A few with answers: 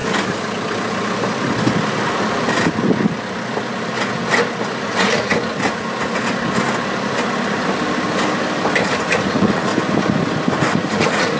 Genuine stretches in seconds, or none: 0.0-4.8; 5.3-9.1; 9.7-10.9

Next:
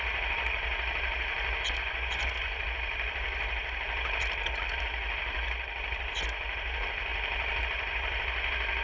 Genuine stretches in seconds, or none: 0.0-1.8; 2.6-8.8

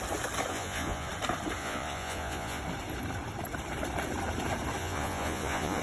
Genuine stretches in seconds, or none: 0.0-0.5; 1.1-1.6; 2.6-4.8

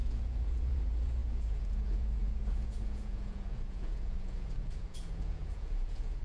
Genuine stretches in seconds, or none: none

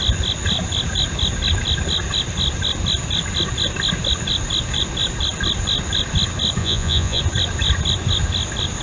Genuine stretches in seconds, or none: 0.0-6.6; 7.2-8.8

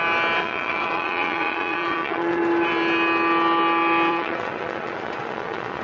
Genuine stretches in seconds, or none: 0.0-0.4; 2.4-4.1

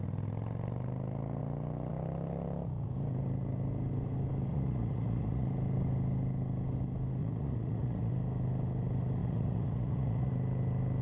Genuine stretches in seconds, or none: 0.0-4.5; 5.5-7.2; 8.1-9.2; 10.3-11.0

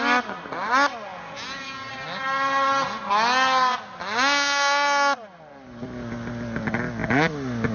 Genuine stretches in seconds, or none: 0.0-1.1; 1.9-7.7